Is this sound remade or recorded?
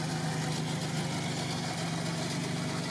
recorded